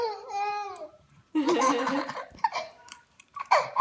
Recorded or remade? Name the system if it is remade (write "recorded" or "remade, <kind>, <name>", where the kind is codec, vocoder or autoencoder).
remade, vocoder, BigVGAN v2